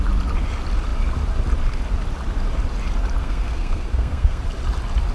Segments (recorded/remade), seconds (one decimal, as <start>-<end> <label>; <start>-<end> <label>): 0.0-3.2 recorded; 3.2-4.4 remade; 4.4-5.1 recorded